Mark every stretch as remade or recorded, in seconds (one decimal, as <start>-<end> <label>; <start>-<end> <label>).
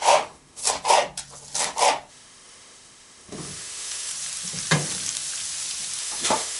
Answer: 0.0-0.6 remade; 0.6-2.1 recorded; 2.1-4.1 remade; 4.1-6.0 recorded; 6.0-6.6 remade